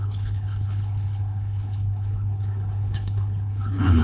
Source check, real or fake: fake